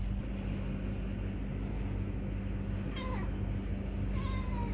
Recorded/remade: recorded